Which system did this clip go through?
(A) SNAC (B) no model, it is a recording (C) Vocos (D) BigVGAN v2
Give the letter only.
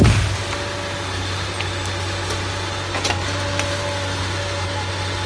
B